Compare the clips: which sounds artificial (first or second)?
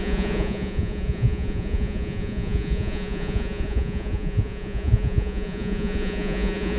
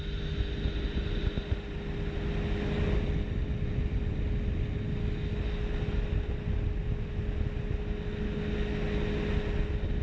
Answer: first